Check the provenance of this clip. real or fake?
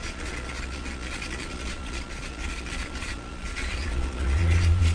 fake